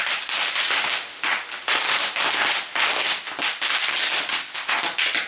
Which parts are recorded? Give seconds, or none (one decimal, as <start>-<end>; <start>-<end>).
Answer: 0.0-4.3; 4.8-5.3

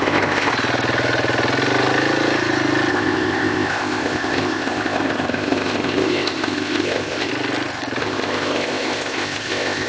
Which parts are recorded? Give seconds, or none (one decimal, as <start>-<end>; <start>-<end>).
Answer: 0.5-2.9; 7.3-8.0

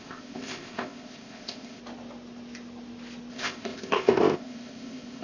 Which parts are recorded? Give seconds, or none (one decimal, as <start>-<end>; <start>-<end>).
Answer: 1.8-3.3

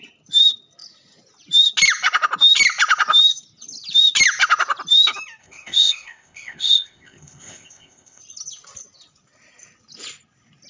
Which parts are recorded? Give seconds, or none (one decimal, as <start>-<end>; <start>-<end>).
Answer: 0.0-5.4; 8.2-10.7

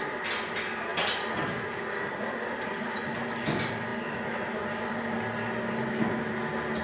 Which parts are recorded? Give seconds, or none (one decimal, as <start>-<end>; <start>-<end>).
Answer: 0.0-6.8

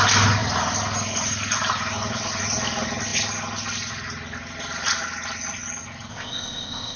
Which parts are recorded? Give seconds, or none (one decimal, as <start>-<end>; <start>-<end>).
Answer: 0.0-6.1

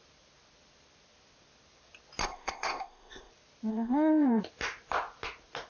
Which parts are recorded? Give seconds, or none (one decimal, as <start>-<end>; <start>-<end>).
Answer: 0.0-2.2; 3.3-3.7; 4.4-5.7

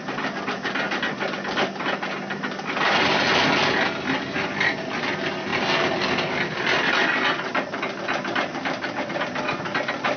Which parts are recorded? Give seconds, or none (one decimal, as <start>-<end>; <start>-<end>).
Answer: 0.0-10.2